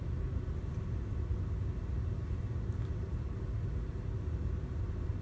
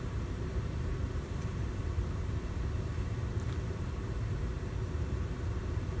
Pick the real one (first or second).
first